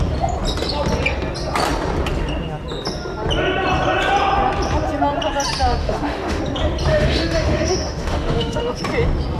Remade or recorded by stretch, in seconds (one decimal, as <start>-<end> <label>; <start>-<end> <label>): 0.0-5.8 recorded; 5.8-6.4 remade; 6.4-6.9 recorded; 6.9-8.8 remade; 8.8-9.4 recorded